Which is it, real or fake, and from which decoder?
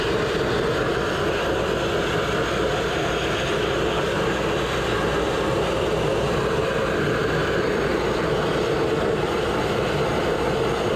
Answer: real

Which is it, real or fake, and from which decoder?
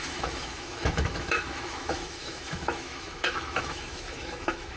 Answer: fake, autoencoder, DAC-VAE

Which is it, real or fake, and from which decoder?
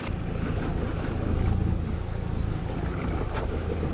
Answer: real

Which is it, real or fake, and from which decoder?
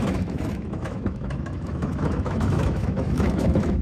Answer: fake, autoencoder, DAC-VAE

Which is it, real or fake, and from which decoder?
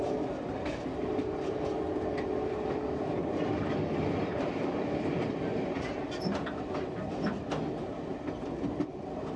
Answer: fake, vocoder, BigVGAN v2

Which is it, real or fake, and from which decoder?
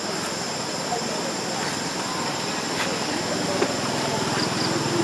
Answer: real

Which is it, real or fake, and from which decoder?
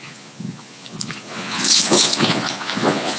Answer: fake, vocoder, Vocos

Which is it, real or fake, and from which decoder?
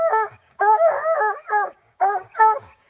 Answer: fake, codec, DAC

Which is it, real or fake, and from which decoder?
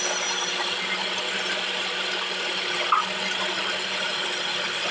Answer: real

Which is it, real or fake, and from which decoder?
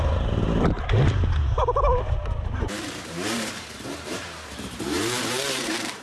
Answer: fake, vocoder, BigVGAN v2